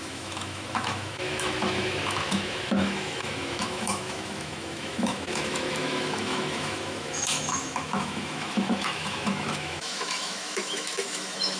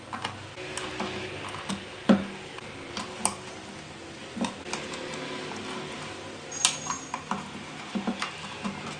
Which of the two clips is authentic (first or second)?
second